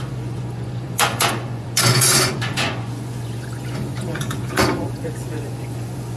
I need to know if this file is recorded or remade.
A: remade